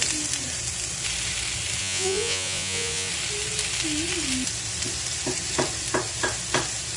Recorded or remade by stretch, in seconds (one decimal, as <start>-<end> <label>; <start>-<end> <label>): 0.0-1.8 recorded; 1.8-3.1 remade; 3.1-7.0 recorded